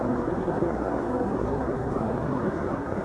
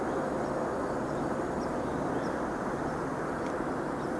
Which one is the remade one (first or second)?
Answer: first